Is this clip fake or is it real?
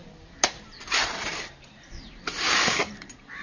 fake